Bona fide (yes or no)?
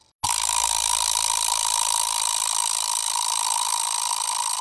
yes